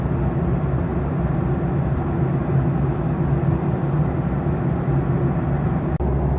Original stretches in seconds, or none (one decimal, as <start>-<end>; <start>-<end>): 0.0-6.4